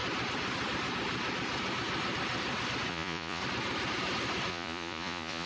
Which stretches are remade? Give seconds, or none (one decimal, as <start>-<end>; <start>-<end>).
2.9-3.4; 4.5-5.5